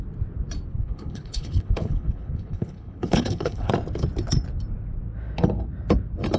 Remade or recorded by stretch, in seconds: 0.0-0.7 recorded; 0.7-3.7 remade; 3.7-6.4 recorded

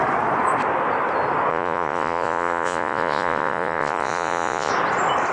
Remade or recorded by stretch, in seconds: 0.0-1.5 recorded; 1.5-4.7 remade; 4.7-5.3 recorded

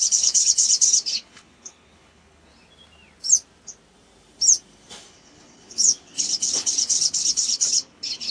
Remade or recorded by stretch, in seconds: 0.0-2.5 remade; 2.5-5.1 recorded; 5.1-8.3 remade

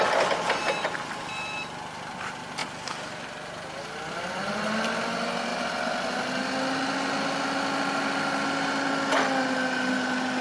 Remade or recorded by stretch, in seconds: 0.0-2.6 remade; 2.6-4.4 recorded; 4.4-5.5 remade; 5.5-9.9 recorded; 9.9-10.4 remade